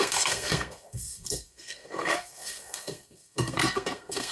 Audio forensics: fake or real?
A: fake